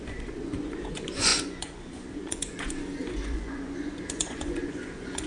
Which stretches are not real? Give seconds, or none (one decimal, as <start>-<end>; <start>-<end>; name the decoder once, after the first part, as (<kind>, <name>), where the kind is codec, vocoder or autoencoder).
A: 0.0-5.3 (vocoder, Vocos)